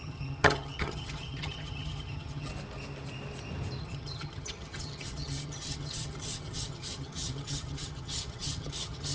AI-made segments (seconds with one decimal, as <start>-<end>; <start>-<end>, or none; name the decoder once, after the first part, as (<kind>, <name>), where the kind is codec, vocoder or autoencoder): 0.0-2.5 (vocoder, HiFi-GAN); 3.8-9.1